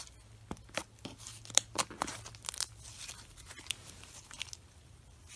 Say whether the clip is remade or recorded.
recorded